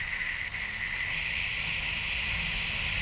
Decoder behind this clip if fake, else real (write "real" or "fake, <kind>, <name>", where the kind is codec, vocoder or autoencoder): real